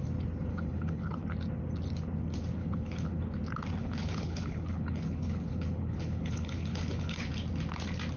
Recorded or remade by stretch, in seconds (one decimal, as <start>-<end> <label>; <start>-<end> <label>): 0.0-0.5 recorded; 0.5-1.2 remade; 1.2-2.6 recorded; 2.6-3.2 remade; 3.2-3.8 recorded; 3.8-7.3 remade; 7.3-8.2 recorded